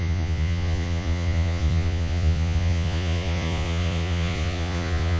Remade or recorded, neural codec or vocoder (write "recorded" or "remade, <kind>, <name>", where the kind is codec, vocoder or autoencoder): remade, vocoder, Vocos